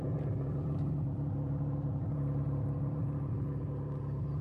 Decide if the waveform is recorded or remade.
remade